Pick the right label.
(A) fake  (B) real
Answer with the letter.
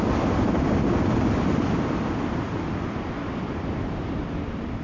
B